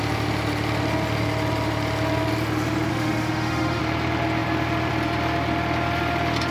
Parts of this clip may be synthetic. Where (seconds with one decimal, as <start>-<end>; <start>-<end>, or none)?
2.9-3.8